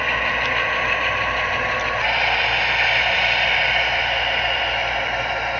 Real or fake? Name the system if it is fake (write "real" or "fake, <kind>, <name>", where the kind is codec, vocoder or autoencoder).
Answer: real